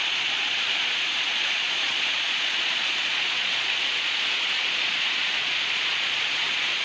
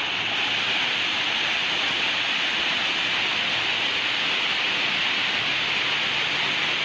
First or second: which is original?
second